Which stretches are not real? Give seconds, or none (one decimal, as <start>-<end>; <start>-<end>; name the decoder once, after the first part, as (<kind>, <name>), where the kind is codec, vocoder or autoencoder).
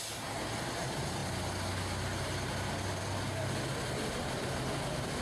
none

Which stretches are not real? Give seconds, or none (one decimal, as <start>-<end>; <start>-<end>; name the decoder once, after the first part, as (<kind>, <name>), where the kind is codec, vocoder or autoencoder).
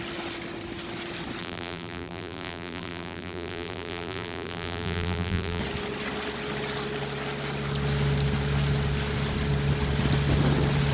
1.4-5.6 (vocoder, BigVGAN v2)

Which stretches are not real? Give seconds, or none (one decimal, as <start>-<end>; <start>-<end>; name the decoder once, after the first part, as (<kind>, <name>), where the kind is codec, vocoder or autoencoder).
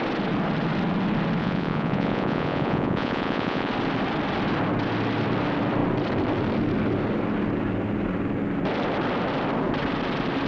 1.4-3.7 (vocoder, Vocos)